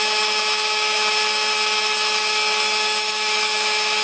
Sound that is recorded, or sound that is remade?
remade